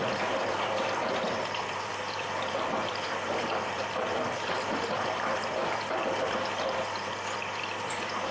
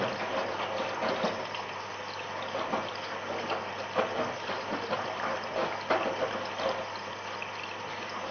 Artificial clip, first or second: first